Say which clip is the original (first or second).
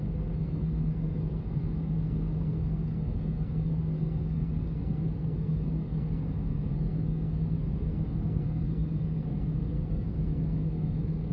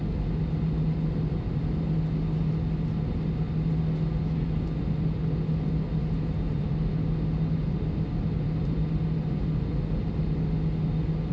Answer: second